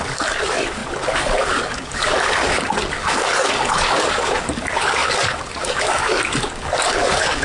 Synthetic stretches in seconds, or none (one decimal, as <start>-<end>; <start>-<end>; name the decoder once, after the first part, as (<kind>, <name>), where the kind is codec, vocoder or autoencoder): 0.0-7.4 (codec, DAC)